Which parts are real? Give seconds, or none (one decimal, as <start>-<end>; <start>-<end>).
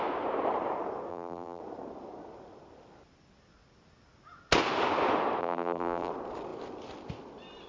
0.0-1.1; 1.6-5.4; 6.1-7.7